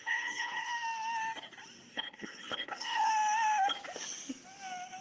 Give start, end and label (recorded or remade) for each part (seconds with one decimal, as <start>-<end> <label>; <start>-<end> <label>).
0.0-0.7 remade; 0.7-1.9 recorded; 1.9-3.1 remade; 3.1-5.0 recorded